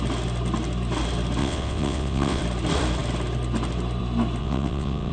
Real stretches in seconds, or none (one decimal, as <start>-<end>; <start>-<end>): 0.0-1.4; 2.4-4.4